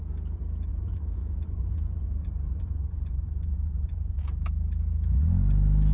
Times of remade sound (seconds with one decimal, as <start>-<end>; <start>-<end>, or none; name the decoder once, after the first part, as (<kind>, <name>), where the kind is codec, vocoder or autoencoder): 0.7-4.2 (vocoder, Vocos)